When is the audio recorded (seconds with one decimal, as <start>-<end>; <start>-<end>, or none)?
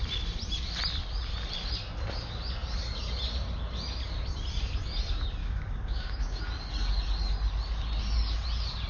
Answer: 0.0-5.4; 6.4-8.9